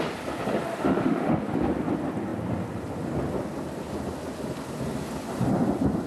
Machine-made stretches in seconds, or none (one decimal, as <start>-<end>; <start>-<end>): 0.7-1.4